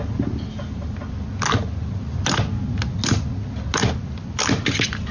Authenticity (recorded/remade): recorded